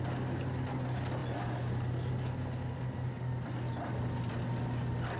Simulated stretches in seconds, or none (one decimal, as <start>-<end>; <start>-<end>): none